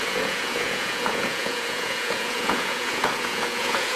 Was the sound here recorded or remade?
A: remade